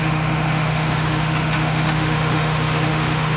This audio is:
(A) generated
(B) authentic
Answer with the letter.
A